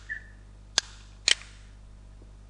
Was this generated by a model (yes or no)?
no